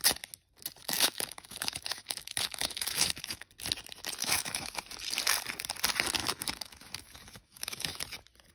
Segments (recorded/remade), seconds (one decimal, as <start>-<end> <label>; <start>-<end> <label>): 0.0-0.8 recorded; 0.8-3.5 remade; 3.5-4.2 recorded; 4.2-4.8 remade; 4.8-6.2 recorded; 6.2-8.0 remade; 8.0-8.5 recorded